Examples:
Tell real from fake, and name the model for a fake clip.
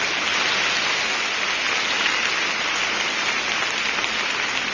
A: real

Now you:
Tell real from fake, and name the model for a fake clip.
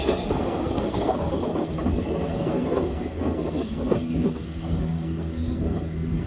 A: fake, codec, SNAC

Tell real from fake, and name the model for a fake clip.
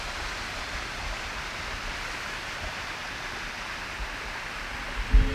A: real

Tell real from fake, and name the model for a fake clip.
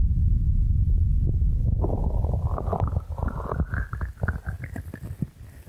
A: real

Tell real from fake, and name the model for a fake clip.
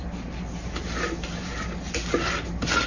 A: real